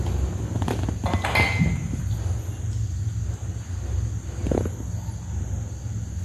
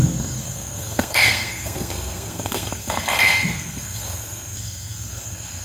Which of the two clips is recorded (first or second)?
first